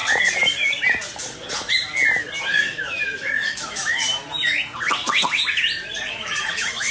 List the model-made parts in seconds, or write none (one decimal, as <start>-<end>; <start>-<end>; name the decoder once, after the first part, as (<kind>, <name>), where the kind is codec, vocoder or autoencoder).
2.4-4.0 (autoencoder, DAC-VAE); 6.1-6.9